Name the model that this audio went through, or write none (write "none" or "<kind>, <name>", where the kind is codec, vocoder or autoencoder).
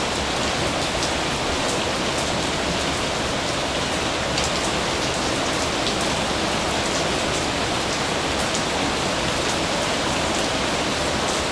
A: none